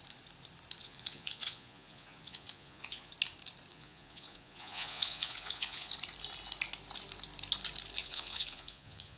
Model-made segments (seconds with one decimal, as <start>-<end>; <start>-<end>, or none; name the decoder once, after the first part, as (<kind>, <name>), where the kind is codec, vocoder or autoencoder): 0.8-3.1 (vocoder, Vocos); 3.7-5.9; 8.0-9.2